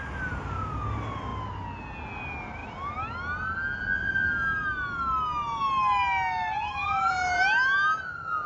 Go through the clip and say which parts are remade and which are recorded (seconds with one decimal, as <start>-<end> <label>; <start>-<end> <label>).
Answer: 0.0-8.5 recorded